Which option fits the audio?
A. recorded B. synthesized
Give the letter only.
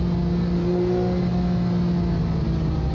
A